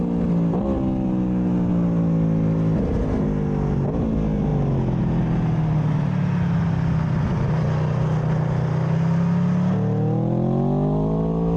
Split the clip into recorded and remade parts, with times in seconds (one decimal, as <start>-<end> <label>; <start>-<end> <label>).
0.0-11.6 recorded

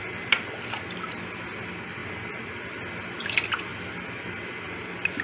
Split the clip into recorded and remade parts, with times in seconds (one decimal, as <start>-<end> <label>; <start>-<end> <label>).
0.0-3.7 remade; 3.7-4.4 recorded; 4.4-5.2 remade

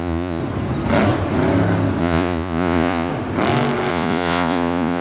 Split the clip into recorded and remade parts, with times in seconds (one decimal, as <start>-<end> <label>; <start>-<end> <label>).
0.0-0.4 remade; 0.4-2.0 recorded; 2.0-3.1 remade; 3.1-3.9 recorded; 3.9-5.0 remade

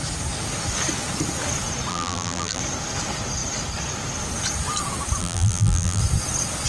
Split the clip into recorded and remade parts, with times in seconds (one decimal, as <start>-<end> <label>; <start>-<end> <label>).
0.0-1.9 recorded; 1.9-2.6 remade; 2.6-5.2 recorded; 5.2-6.0 remade; 6.0-6.7 recorded

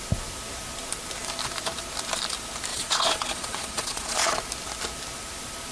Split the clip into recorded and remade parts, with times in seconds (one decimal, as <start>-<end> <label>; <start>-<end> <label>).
0.0-2.7 recorded; 2.7-4.4 remade; 4.4-5.7 recorded

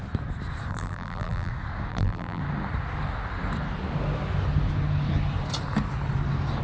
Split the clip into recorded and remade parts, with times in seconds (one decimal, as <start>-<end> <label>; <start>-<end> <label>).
0.0-0.7 recorded; 0.7-1.5 remade; 1.5-1.9 recorded; 1.9-2.4 remade; 2.4-6.6 recorded